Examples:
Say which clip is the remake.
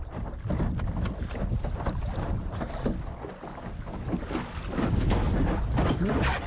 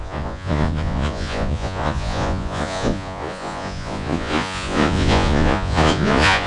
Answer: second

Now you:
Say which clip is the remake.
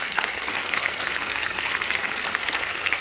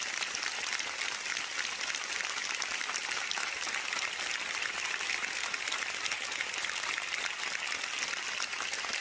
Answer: first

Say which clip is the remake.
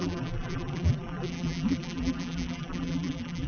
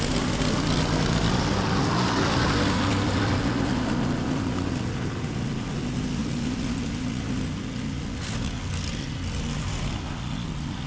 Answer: first